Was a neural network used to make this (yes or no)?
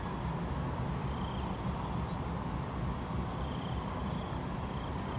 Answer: no